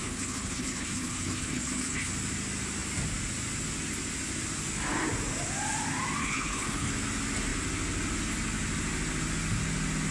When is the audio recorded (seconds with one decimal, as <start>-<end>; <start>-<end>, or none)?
2.1-6.2; 6.9-10.1